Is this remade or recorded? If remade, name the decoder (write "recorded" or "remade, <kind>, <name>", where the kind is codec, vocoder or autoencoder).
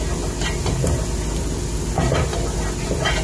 recorded